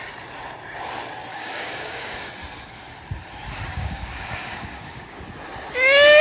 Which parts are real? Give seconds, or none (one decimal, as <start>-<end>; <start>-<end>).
0.0-1.3; 2.3-3.7; 5.2-6.2